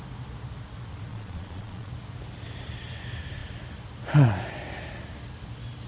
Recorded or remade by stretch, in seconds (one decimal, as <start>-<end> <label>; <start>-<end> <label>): 0.0-1.1 recorded; 1.1-1.9 remade; 1.9-5.9 recorded